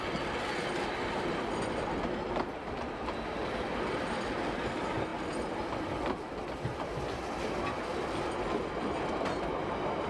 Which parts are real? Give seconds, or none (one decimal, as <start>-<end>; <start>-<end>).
0.0-10.1